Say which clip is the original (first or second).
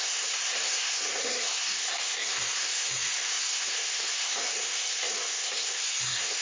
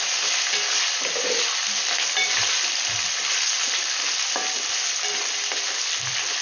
second